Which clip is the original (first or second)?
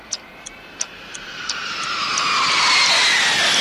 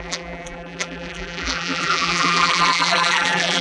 first